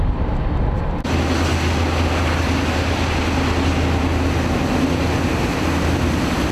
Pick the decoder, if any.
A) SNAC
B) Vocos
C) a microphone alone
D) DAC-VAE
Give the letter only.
C